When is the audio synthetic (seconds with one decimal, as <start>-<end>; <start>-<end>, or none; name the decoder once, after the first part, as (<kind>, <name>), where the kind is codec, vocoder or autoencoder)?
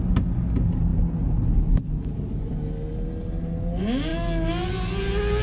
none